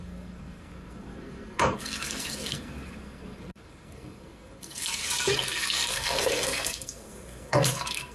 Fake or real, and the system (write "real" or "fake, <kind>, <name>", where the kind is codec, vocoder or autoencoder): fake, codec, SNAC